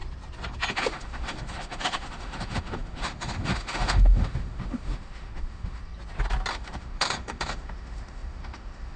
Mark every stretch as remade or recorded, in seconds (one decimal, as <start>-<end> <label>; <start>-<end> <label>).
0.0-0.7 recorded; 0.7-5.8 remade; 5.8-6.5 recorded; 6.5-9.0 remade